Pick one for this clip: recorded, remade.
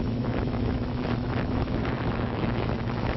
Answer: remade